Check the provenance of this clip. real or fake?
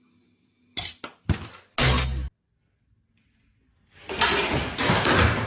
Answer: real